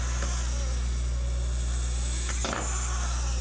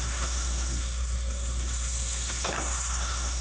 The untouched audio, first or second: first